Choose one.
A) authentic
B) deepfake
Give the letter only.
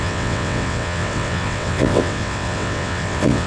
B